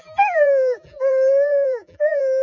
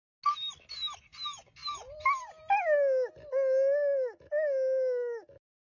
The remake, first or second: first